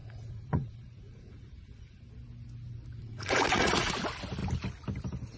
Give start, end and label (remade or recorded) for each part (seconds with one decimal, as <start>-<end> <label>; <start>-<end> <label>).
0.0-2.0 remade; 2.0-3.0 recorded; 3.0-3.9 remade; 3.9-5.4 recorded